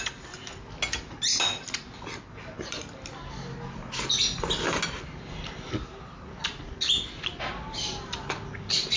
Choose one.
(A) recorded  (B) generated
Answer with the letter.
A